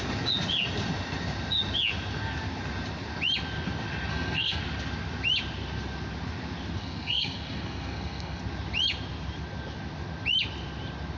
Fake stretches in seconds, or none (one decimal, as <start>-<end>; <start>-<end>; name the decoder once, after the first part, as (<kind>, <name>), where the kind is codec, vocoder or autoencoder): 4.1-4.6 (codec, SNAC); 6.8-8.4